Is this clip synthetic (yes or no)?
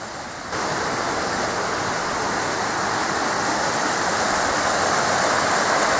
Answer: no